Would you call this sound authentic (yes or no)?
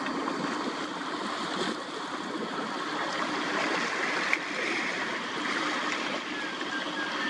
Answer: yes